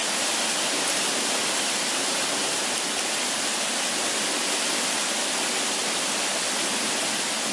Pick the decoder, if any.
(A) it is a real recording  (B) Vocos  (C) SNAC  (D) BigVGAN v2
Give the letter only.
A